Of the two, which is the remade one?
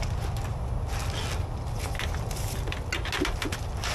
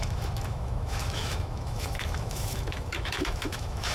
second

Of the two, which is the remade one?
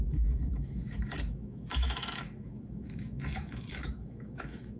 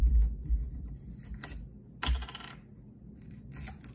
first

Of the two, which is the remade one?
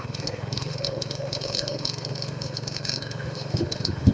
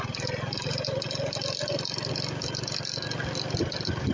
first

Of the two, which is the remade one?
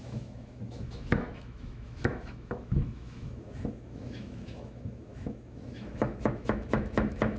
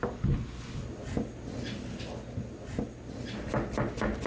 first